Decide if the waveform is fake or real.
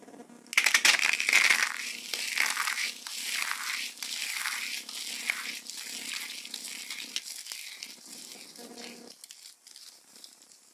real